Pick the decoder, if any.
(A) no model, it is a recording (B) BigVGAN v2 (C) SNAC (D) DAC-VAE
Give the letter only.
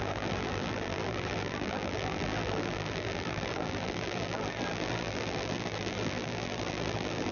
B